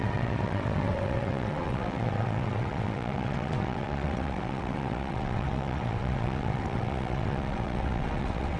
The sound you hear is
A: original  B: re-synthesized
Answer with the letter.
B